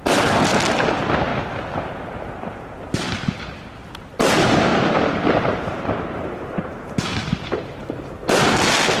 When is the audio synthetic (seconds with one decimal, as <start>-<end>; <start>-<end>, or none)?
4.7-6.7